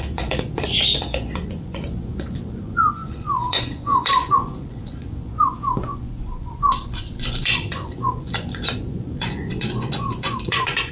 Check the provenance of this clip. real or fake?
fake